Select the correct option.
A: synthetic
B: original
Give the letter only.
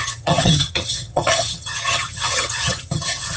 A